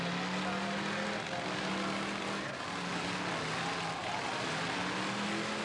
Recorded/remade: recorded